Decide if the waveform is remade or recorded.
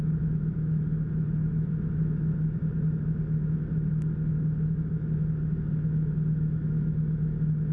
remade